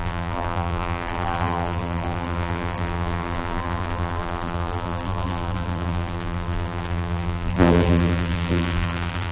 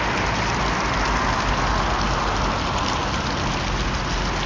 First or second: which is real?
second